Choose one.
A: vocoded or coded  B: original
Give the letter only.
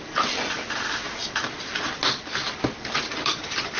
B